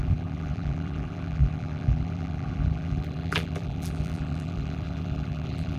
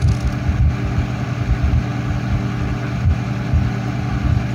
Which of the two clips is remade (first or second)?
first